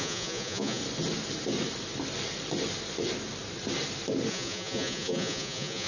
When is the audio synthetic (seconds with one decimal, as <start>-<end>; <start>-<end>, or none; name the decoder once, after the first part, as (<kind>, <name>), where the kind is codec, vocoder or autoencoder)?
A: 0.0-0.8 (vocoder, Vocos); 4.3-5.9